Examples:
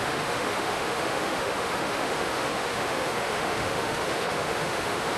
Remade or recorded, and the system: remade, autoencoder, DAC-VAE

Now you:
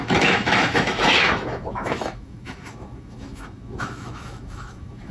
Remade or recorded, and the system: remade, autoencoder, DAC-VAE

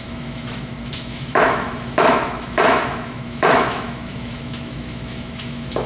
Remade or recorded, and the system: remade, autoencoder, DAC-VAE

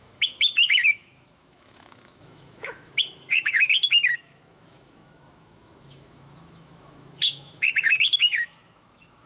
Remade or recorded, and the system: remade, autoencoder, DAC-VAE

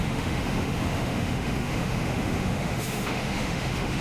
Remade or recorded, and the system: remade, autoencoder, DAC-VAE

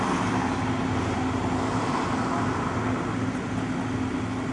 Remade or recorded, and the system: recorded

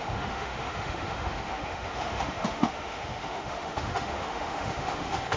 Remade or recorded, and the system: remade, autoencoder, DAC-VAE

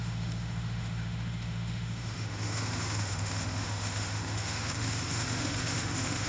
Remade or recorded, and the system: remade, autoencoder, DAC-VAE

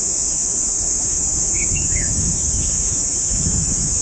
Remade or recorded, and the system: remade, autoencoder, DAC-VAE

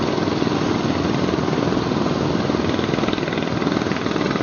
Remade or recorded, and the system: recorded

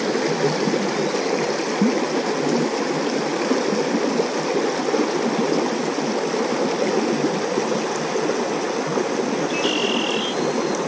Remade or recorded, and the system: recorded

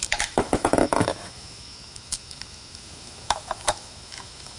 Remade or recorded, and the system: remade, autoencoder, DAC-VAE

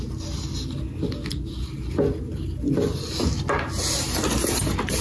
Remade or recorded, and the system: recorded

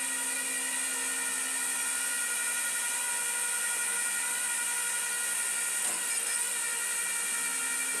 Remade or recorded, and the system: recorded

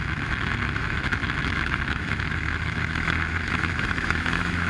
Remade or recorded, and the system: remade, autoencoder, DAC-VAE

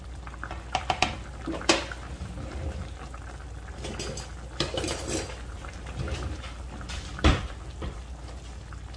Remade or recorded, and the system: recorded